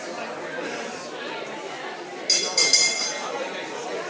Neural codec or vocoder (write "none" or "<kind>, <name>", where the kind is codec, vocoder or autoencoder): none